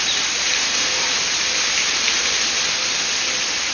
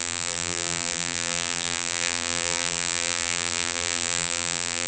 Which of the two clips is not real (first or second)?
second